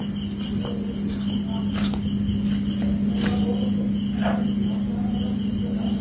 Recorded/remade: recorded